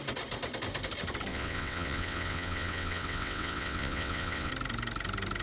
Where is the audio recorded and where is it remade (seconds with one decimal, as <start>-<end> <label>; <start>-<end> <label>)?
0.0-1.3 recorded; 1.3-4.5 remade; 4.5-5.4 recorded